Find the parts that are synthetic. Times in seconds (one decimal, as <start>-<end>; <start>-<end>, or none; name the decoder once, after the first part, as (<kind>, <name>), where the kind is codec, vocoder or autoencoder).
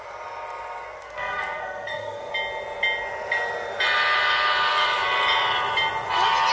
1.0-2.3 (codec, SNAC)